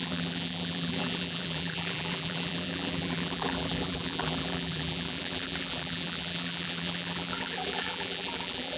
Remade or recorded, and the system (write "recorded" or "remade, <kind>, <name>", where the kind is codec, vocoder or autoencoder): remade, vocoder, BigVGAN v2